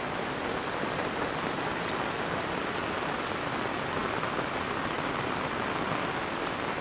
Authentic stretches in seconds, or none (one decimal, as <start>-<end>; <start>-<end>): 0.0-6.8